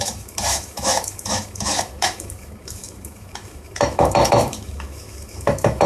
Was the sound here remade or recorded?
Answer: remade